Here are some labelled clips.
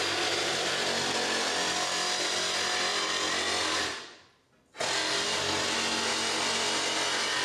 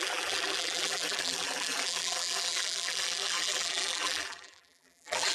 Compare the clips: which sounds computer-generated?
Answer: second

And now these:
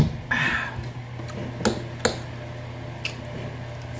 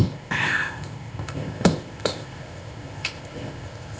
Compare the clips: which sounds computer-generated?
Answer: second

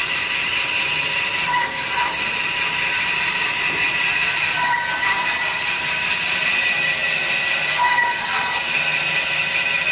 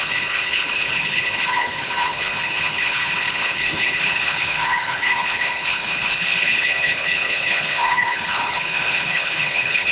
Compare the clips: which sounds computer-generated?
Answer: second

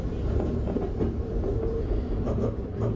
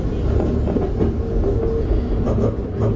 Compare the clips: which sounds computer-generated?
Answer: first